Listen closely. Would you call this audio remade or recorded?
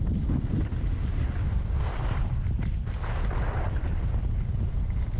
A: recorded